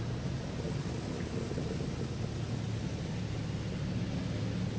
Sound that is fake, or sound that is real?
real